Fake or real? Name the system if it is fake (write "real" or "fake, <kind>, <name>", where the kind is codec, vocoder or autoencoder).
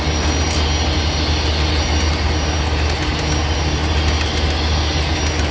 real